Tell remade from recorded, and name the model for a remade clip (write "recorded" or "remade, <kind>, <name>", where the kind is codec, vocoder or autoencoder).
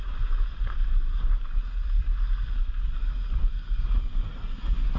recorded